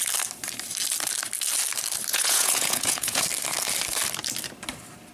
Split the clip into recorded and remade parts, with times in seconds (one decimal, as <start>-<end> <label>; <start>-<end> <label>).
0.0-2.1 recorded; 2.1-3.2 remade; 3.2-5.1 recorded